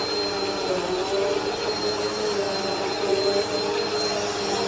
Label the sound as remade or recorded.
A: recorded